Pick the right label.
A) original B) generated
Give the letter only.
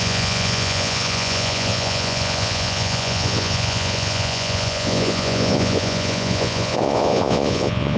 B